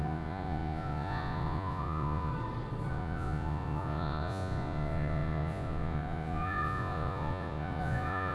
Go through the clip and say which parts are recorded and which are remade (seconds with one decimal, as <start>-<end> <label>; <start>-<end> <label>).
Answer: 0.0-2.3 remade; 2.3-2.9 recorded; 2.9-8.3 remade